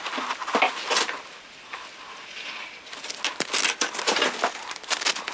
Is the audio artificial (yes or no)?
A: no